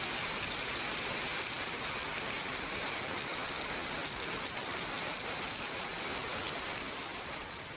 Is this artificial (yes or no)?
no